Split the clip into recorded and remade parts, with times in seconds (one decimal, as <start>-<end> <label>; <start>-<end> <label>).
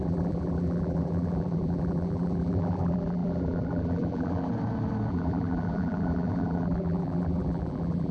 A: 0.0-4.5 remade; 4.5-5.1 recorded; 5.1-8.1 remade